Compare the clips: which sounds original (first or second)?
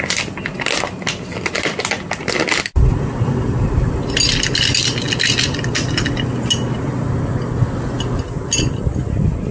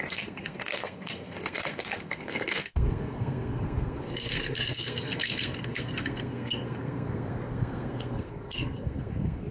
first